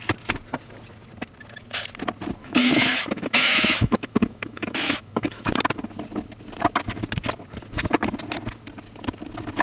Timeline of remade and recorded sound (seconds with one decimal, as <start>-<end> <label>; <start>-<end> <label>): 0.0-2.4 recorded; 2.4-5.5 remade; 5.5-9.6 recorded